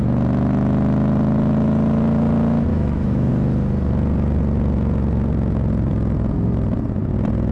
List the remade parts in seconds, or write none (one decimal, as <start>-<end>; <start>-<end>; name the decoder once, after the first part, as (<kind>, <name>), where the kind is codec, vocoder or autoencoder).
2.7-3.3 (autoencoder, DAC-VAE)